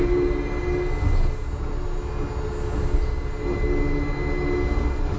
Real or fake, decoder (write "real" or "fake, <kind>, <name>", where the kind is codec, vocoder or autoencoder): real